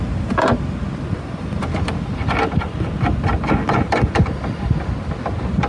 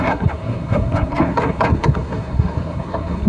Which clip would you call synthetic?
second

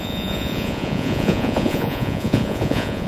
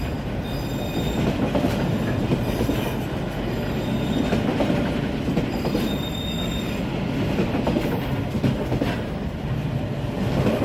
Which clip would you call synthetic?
first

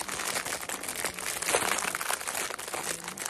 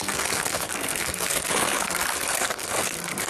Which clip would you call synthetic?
second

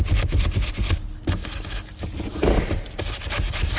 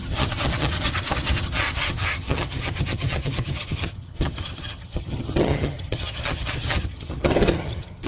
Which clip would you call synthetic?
second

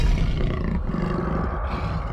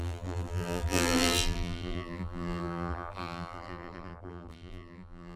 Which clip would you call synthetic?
second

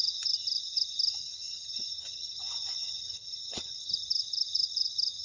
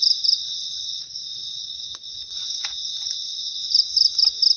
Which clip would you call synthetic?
first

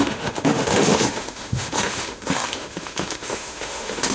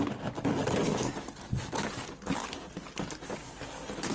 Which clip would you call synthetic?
first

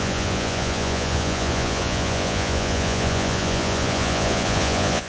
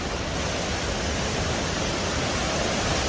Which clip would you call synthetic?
first